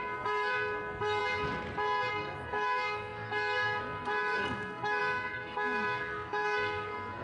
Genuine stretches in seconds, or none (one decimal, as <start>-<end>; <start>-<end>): 1.2-2.1